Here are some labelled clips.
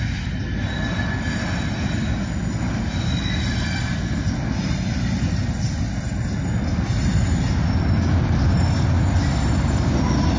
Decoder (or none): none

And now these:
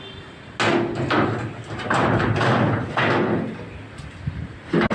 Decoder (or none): none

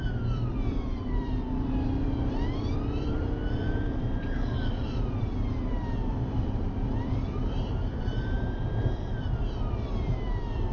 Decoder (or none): vocoder, BigVGAN v2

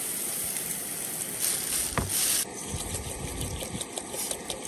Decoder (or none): none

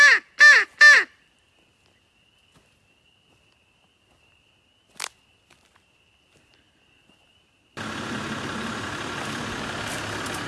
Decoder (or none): none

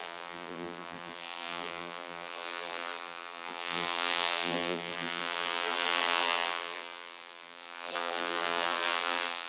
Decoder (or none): vocoder, BigVGAN v2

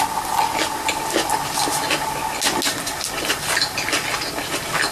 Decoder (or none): none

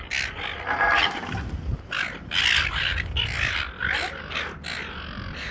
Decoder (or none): none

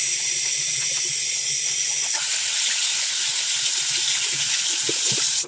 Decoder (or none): none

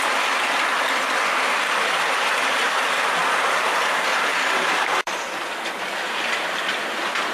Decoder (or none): vocoder, BigVGAN v2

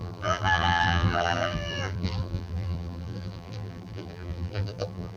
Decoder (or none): vocoder, BigVGAN v2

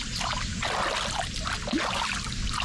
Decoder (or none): none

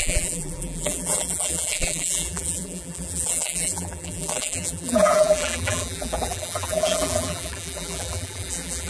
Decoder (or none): vocoder, BigVGAN v2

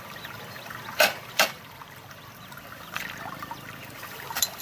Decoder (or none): vocoder, BigVGAN v2